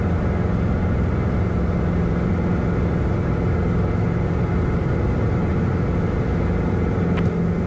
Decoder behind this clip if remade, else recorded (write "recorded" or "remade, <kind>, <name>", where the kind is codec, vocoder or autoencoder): recorded